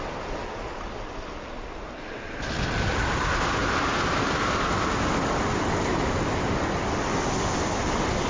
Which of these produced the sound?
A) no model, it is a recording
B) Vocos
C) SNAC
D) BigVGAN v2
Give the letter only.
A